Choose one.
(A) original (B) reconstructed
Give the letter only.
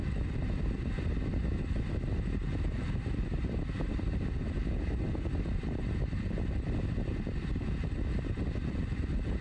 B